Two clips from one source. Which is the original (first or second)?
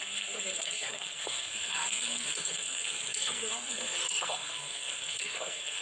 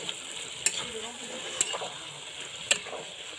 second